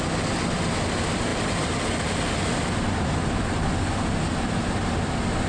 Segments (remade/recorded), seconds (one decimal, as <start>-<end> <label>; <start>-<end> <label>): 0.0-5.5 recorded